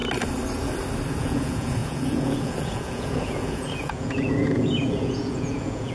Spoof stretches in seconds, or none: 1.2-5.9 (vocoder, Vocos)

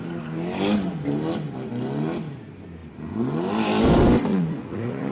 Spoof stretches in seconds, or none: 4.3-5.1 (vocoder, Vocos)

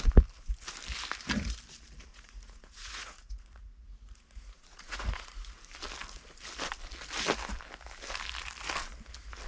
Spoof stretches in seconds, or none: 2.1-5.5 (vocoder, Vocos)

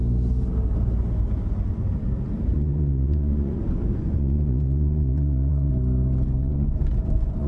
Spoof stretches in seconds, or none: 2.5-5.7 (vocoder, Vocos); 6.4-7.5